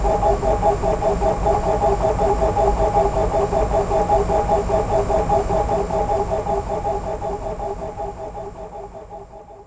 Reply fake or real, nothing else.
real